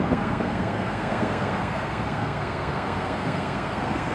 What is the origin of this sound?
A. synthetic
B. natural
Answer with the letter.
A